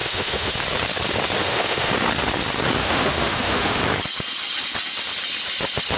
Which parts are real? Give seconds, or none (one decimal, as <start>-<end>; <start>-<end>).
0.5-1.4; 1.9-2.8; 3.8-6.0